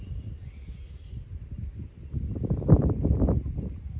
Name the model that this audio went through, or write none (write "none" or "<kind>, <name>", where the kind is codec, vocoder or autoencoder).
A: none